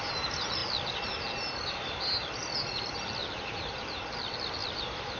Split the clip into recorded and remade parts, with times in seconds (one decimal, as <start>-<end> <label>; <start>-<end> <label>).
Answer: 0.0-3.2 recorded; 3.2-4.0 remade; 4.0-4.6 recorded; 4.6-5.2 remade